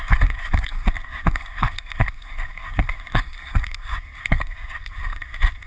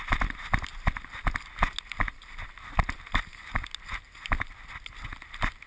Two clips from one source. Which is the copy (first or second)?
first